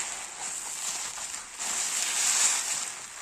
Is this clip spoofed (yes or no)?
no